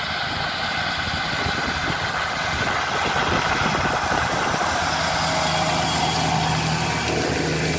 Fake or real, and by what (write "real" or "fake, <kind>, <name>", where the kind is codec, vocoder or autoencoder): real